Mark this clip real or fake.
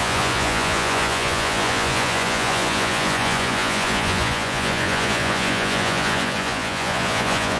fake